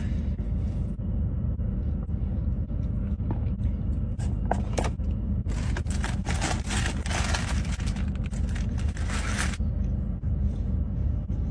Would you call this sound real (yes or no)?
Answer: yes